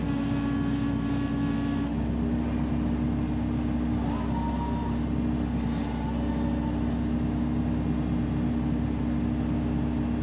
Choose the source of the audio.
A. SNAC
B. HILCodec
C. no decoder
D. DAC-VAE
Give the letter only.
C